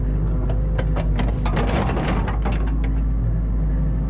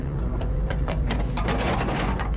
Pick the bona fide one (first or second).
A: first